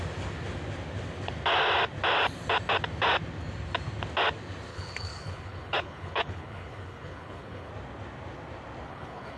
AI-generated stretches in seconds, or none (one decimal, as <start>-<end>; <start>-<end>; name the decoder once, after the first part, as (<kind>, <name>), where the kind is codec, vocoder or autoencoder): 4.7-7.7 (codec, HILCodec); 8.9-9.4